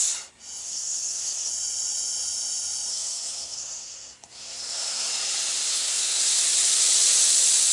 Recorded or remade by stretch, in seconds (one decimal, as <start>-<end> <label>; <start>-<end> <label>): 0.0-0.6 recorded; 0.6-1.5 remade; 1.5-2.9 recorded; 2.9-5.1 remade; 5.1-5.7 recorded; 5.7-6.4 remade; 6.4-7.7 recorded